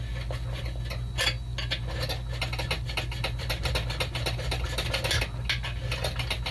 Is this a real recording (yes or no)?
yes